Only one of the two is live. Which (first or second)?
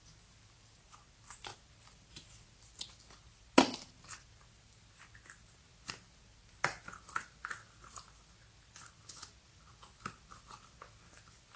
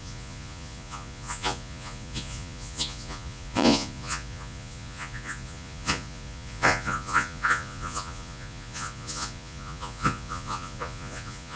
first